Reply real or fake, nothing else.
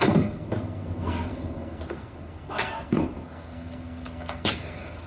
fake